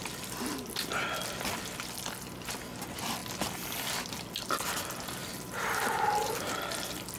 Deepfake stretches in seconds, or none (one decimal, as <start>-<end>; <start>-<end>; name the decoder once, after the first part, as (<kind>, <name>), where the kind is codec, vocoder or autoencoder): 5.2-6.6 (vocoder, BigVGAN v2)